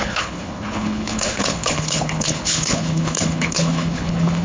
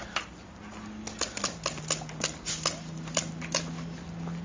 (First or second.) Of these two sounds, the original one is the second